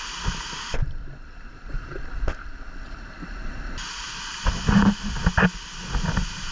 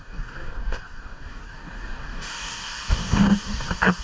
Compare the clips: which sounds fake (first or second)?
second